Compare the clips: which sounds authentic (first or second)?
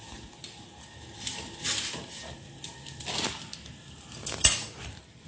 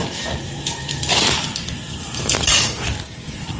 first